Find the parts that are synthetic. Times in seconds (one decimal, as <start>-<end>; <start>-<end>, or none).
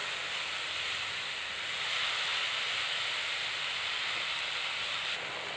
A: none